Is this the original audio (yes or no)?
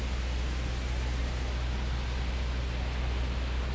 yes